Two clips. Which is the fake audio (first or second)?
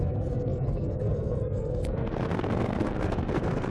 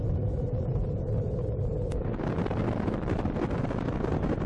first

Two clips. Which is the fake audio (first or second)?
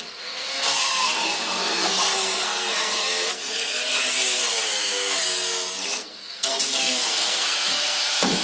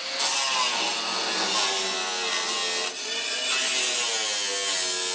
first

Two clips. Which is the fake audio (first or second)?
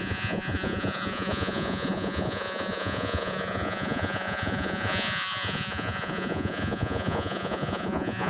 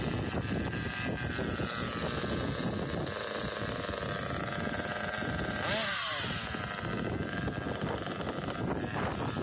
first